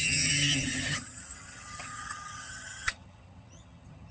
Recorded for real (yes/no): no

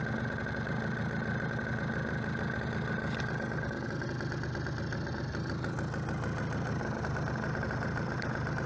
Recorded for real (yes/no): yes